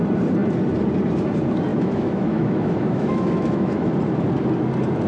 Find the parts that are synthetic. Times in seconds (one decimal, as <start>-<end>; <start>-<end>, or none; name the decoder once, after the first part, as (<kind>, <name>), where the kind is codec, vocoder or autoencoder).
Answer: 1.7-3.9 (autoencoder, DAC-VAE)